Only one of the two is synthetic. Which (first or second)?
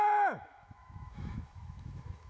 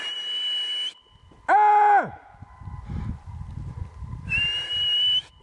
first